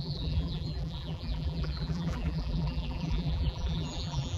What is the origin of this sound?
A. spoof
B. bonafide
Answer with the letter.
A